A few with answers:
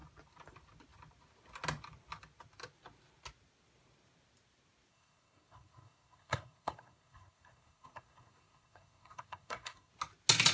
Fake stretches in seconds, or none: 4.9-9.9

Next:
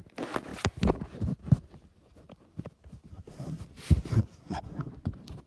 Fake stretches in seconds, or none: 3.1-3.6; 4.1-4.9

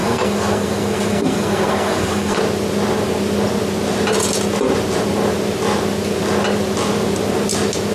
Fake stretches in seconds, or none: 0.0-2.4

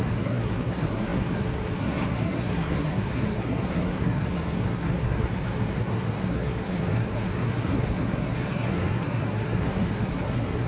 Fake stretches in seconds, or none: 0.0-10.7

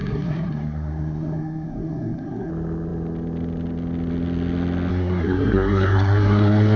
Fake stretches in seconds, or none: 0.0-2.5; 4.9-6.8